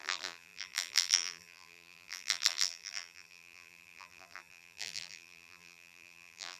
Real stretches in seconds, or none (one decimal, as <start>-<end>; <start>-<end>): none